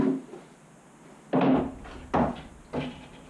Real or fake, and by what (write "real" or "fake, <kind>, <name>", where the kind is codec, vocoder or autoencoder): real